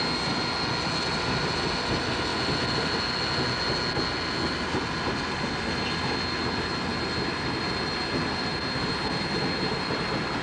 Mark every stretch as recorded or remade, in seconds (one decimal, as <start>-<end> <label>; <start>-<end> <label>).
0.0-10.4 recorded